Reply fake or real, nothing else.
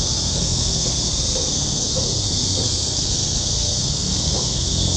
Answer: fake